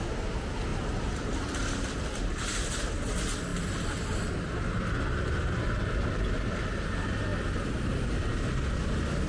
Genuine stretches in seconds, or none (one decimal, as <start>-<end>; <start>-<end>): 0.0-0.7; 1.6-3.5; 5.6-9.3